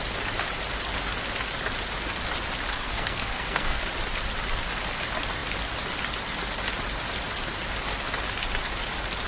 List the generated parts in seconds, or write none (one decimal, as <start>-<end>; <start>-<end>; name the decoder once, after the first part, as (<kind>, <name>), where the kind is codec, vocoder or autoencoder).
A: 2.7-3.8 (codec, SNAC)